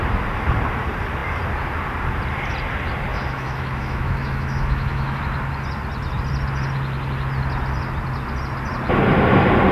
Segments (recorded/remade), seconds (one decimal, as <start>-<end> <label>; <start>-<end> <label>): 0.0-3.1 recorded; 3.1-5.2 remade; 5.2-9.7 recorded